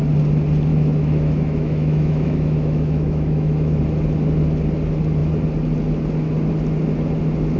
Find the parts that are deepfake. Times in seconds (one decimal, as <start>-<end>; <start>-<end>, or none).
0.7-3.8